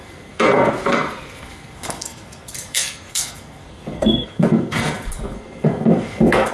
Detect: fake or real fake